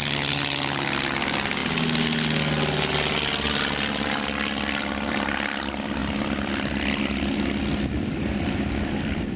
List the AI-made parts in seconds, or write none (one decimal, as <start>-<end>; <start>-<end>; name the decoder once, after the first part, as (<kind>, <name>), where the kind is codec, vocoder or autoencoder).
none